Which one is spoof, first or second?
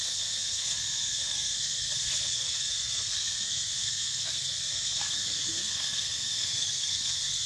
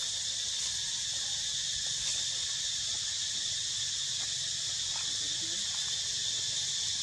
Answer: first